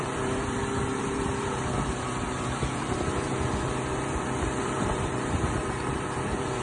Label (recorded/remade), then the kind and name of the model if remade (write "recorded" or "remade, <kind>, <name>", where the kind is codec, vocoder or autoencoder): remade, vocoder, BigVGAN v2